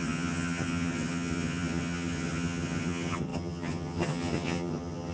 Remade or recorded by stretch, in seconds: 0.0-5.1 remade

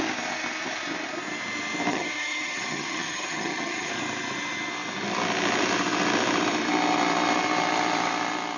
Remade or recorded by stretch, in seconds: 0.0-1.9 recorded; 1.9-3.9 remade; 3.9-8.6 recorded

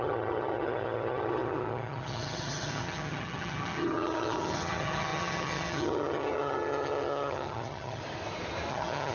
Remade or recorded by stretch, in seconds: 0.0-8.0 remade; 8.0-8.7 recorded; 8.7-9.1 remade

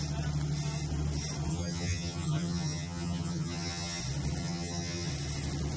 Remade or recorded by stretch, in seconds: 0.0-1.5 recorded; 1.5-4.0 remade; 4.0-4.4 recorded; 4.4-5.1 remade; 5.1-5.8 recorded

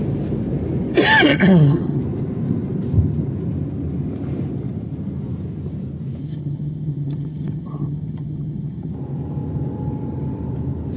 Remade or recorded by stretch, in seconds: 0.0-1.3 recorded; 1.3-2.0 remade; 2.0-6.2 recorded; 6.2-8.9 remade; 8.9-11.0 recorded

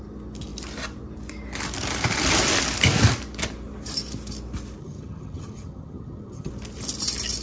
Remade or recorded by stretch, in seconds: 0.0-4.8 recorded; 4.8-6.5 remade; 6.5-7.4 recorded